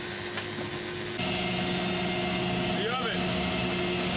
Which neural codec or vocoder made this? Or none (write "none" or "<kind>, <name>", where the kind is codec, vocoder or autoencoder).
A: none